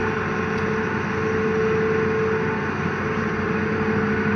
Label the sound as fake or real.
real